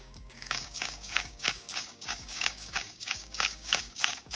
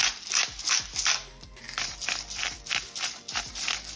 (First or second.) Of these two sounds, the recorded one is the second